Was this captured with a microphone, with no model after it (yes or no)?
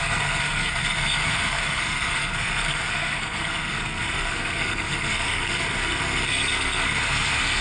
no